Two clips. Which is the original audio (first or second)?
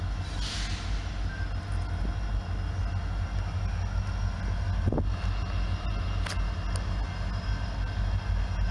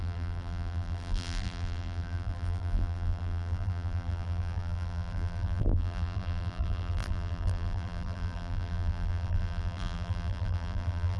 first